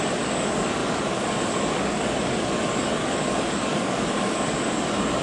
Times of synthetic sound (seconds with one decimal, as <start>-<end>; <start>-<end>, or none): 0.0-5.2